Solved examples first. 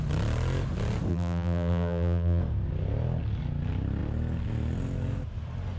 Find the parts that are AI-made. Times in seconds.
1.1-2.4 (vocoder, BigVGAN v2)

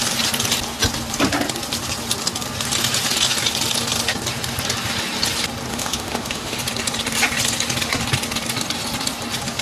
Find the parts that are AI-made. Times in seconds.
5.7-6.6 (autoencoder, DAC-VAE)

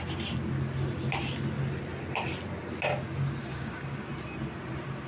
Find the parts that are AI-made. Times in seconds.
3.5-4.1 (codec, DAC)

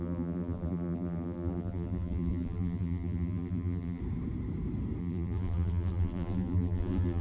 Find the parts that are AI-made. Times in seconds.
0.0-4.0 (vocoder, BigVGAN v2); 5.0-7.2

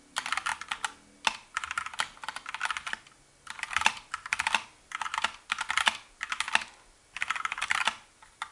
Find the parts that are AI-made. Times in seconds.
none

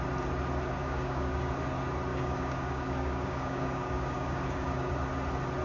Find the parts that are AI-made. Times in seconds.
0.8-1.5 (codec, DAC); 2.1-4.9